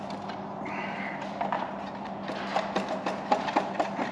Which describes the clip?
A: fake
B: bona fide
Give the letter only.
B